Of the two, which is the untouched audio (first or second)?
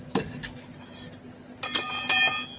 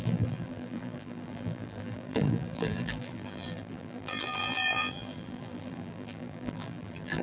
first